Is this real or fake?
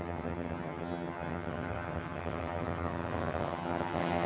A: fake